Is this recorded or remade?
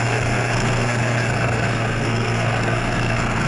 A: remade